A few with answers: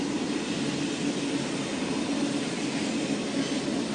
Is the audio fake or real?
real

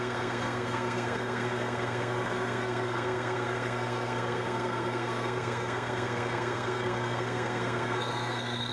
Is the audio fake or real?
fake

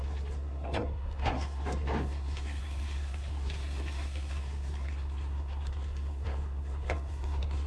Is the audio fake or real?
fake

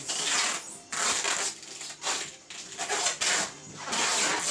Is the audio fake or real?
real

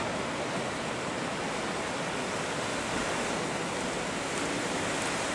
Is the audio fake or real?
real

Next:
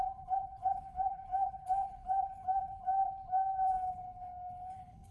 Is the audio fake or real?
fake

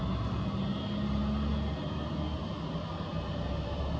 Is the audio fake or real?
real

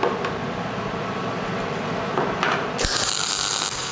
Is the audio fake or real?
real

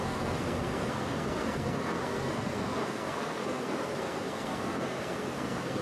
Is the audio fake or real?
fake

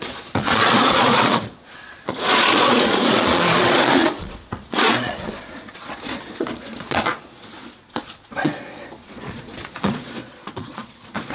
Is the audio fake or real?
fake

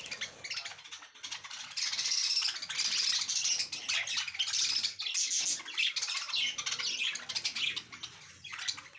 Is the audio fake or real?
real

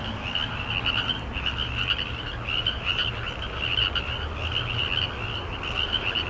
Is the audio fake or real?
real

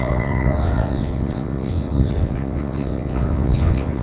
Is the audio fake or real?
fake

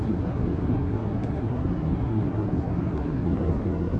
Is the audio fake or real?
fake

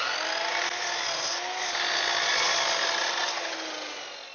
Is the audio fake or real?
real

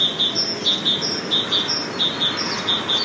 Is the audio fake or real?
real